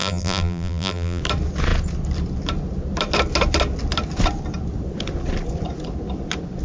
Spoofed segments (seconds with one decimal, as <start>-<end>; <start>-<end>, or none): 0.0-1.2